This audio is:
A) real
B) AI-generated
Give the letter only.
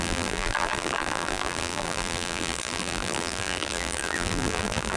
B